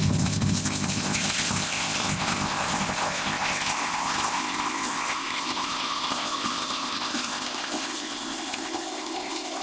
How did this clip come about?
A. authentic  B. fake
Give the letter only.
B